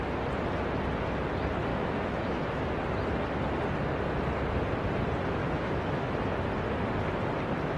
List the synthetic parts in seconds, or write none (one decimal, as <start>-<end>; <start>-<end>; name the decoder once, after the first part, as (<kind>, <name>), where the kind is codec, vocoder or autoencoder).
1.7-2.7 (autoencoder, DAC-VAE); 5.4-6.1